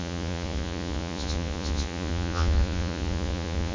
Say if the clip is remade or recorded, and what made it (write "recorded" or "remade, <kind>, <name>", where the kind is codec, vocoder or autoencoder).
remade, vocoder, Vocos